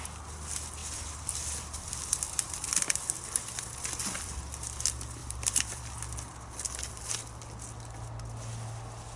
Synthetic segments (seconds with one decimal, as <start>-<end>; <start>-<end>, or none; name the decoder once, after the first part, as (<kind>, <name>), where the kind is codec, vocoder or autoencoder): 0.8-1.9 (vocoder, BigVGAN v2); 5.2-5.9